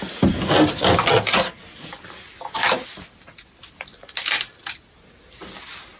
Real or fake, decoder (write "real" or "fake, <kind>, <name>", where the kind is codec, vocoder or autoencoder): real